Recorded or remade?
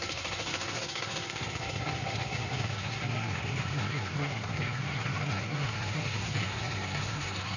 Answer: remade